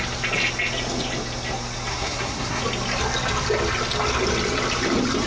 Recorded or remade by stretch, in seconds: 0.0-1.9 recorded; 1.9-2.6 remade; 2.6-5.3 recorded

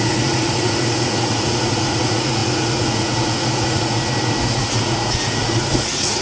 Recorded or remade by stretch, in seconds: 0.0-6.2 remade

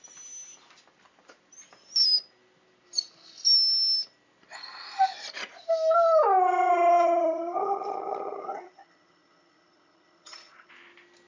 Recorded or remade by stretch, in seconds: 0.0-6.9 recorded; 6.9-10.7 remade; 10.7-11.3 recorded

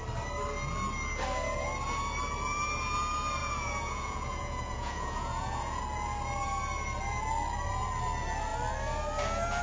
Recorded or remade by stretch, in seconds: 0.0-3.4 recorded; 3.4-5.8 remade; 5.8-9.6 recorded

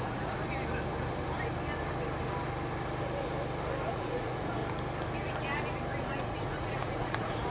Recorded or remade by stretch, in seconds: 0.0-0.4 remade; 0.4-3.9 recorded; 3.9-4.6 remade; 4.6-6.0 recorded; 6.0-7.5 remade

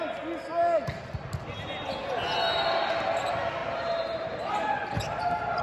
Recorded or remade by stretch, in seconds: 0.0-3.6 recorded; 3.6-5.0 remade; 5.0-5.6 recorded

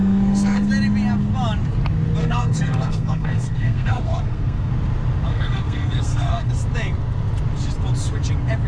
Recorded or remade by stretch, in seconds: 0.0-0.7 remade; 0.7-2.2 recorded; 2.2-4.7 remade; 4.7-5.3 recorded; 5.3-6.5 remade; 6.5-8.7 recorded